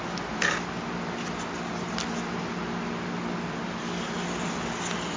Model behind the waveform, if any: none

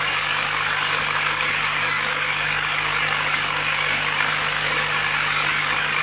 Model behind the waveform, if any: codec, DAC